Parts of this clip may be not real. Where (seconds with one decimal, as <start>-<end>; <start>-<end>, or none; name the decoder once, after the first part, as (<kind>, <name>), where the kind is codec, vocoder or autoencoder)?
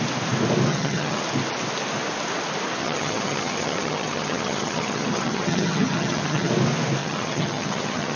0.7-1.2 (vocoder, HiFi-GAN); 2.8-6.5; 7.0-8.2